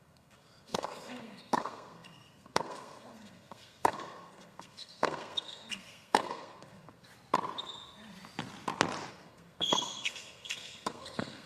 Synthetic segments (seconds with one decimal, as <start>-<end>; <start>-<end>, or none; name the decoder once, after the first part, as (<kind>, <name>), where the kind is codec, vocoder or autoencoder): 0.0-7.1 (codec, SNAC); 9.1-11.5